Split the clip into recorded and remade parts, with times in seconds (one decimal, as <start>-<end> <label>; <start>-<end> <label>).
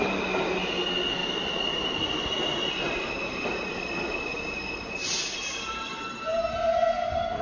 0.0-7.4 recorded